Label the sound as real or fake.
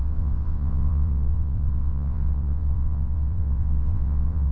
fake